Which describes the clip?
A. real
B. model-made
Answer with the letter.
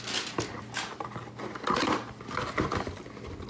A